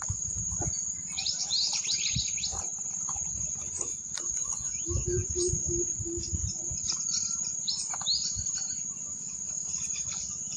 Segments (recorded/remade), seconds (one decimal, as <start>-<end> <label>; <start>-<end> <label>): 0.0-3.9 recorded; 3.9-4.7 remade; 4.7-10.6 recorded